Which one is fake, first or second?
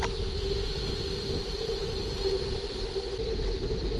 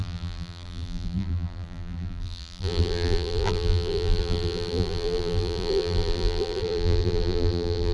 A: second